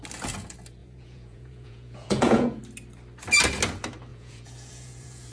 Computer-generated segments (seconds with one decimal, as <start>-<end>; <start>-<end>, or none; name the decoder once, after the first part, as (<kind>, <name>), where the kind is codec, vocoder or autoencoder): 0.8-2.6 (vocoder, Vocos); 4.1-5.3